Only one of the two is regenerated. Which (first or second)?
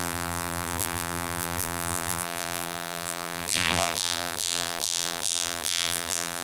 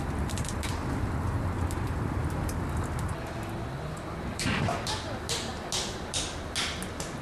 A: first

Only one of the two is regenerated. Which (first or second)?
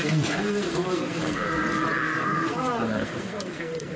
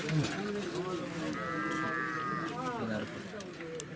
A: first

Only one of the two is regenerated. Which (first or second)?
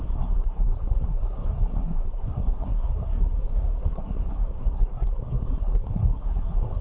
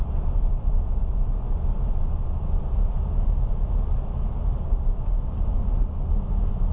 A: first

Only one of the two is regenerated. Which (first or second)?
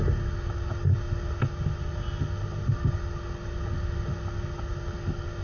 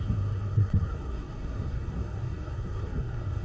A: second